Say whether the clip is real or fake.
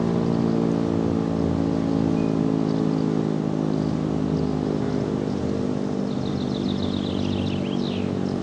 real